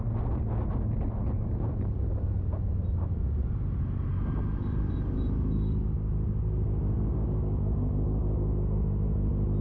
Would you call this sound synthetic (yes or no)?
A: no